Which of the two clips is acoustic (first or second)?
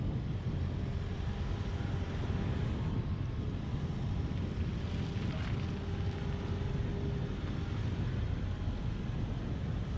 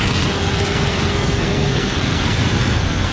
first